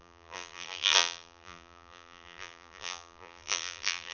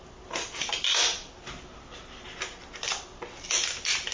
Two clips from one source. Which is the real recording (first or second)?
second